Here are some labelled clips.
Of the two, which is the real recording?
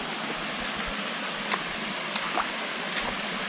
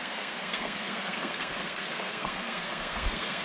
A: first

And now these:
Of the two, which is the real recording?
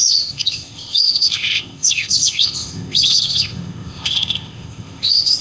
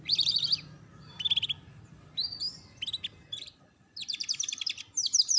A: second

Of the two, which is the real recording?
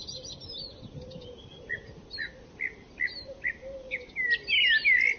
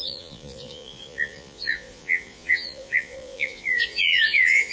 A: first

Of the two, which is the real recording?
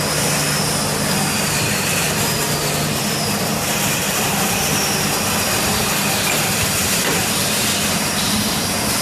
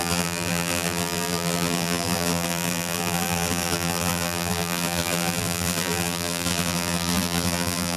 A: first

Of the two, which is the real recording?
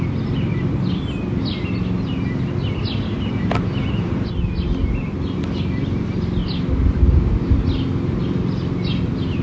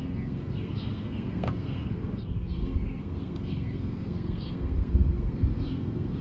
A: first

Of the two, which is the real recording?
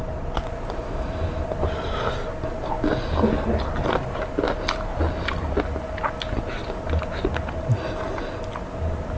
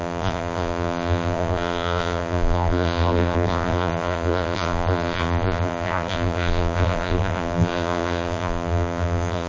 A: first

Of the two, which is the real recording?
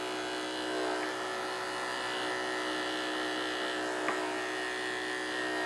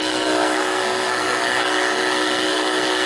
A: first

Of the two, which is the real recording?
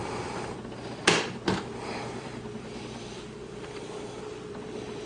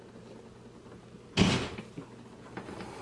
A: second